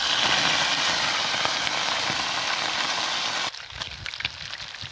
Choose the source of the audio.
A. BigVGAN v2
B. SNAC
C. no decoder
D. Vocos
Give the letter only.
C